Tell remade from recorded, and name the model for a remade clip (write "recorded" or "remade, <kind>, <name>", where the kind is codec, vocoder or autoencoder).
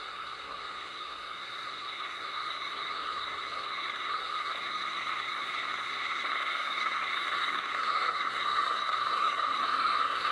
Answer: remade, codec, SNAC